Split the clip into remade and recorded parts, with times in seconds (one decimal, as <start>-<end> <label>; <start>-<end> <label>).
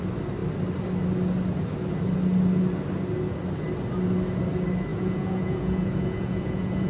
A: 0.0-4.9 recorded; 4.9-6.9 remade